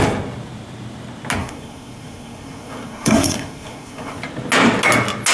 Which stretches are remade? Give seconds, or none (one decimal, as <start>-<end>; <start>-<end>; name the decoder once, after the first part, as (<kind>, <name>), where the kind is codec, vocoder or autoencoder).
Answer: 1.4-4.2 (codec, SNAC)